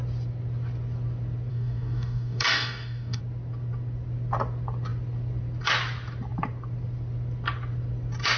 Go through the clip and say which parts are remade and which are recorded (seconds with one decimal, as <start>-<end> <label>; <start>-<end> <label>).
0.0-1.5 recorded; 1.5-3.2 remade; 3.2-8.4 recorded